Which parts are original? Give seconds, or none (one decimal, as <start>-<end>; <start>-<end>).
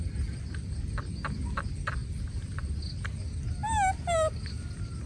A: 0.0-5.1